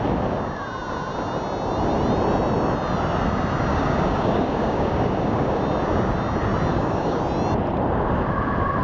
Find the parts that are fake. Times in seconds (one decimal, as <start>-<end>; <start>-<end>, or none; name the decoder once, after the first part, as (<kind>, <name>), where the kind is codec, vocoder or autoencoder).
3.7-5.6 (codec, DAC); 6.7-7.2